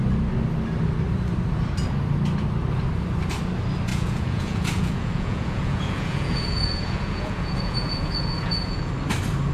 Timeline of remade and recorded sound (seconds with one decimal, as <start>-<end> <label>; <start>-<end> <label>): 0.0-3.9 recorded; 3.9-8.9 remade; 8.9-9.5 recorded